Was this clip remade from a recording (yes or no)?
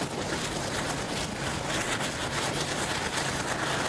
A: no